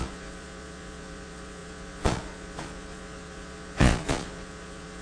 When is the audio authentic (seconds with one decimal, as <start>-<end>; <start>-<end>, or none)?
none